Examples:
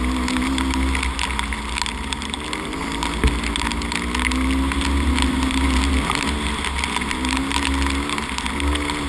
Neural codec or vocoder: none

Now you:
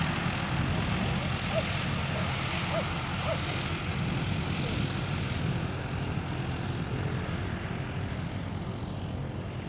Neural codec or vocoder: none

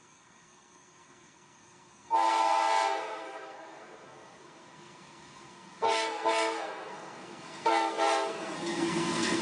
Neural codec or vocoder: codec, SNAC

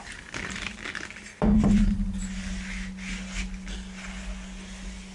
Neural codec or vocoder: none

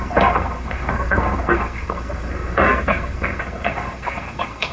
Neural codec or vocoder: codec, SNAC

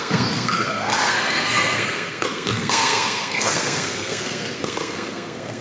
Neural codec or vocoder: codec, SNAC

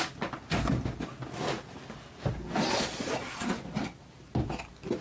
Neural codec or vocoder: none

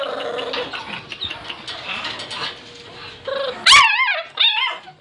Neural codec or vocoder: none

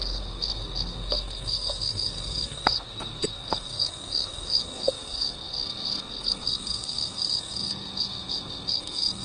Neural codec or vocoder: codec, SNAC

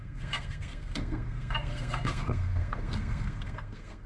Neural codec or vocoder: codec, SNAC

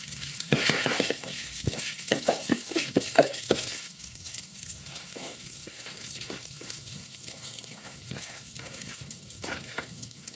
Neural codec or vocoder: codec, SNAC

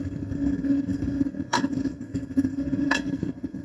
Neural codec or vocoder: codec, SNAC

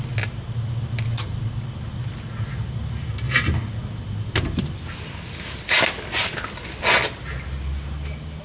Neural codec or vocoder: none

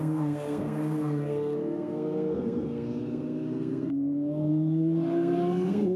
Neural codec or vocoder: codec, SNAC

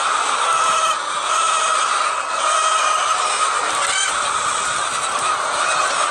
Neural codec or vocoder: none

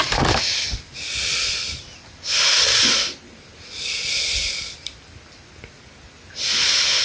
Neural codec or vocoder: none